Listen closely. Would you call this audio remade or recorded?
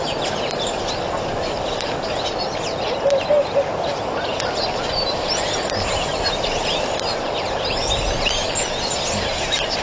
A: recorded